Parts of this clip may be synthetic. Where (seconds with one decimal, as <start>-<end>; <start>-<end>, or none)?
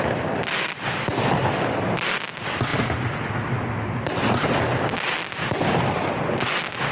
none